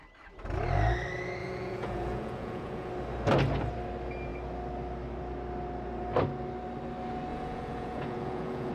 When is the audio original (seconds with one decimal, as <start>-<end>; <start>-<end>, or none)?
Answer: 0.0-1.4; 2.9-7.3